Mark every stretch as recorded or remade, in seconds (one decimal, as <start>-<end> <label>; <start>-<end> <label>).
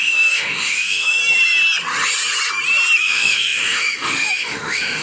0.0-1.2 remade; 1.2-3.0 recorded; 3.0-5.0 remade